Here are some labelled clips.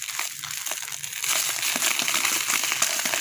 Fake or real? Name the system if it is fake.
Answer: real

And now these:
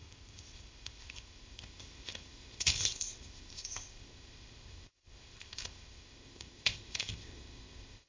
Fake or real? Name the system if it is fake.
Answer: fake, codec, ZipCodec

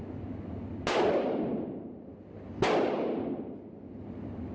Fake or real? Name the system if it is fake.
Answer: real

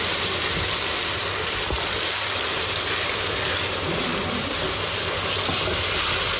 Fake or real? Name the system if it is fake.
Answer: real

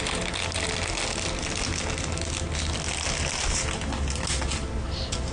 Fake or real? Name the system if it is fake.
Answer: real